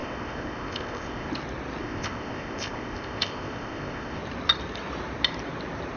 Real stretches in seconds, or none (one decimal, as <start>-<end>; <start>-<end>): 1.3-1.8; 4.2-6.0